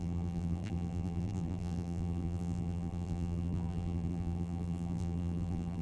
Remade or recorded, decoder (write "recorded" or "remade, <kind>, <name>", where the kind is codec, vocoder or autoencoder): remade, vocoder, BigVGAN v2